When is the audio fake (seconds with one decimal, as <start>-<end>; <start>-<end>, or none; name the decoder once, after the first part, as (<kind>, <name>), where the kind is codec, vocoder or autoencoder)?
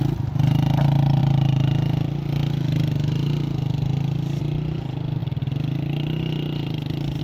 none